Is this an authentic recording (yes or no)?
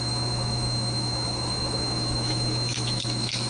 no